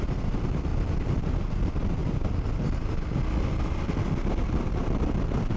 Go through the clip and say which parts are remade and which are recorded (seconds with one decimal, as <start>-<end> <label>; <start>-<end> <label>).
0.0-5.6 recorded